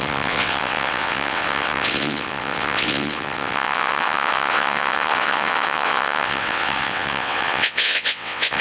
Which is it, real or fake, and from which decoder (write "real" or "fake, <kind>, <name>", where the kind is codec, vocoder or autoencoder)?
fake, vocoder, WaveNeXt